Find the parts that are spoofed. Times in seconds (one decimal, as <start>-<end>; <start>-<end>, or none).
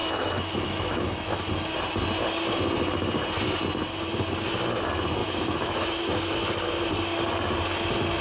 0.0-1.5; 5.2-6.0